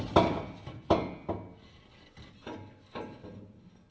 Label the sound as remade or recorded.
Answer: recorded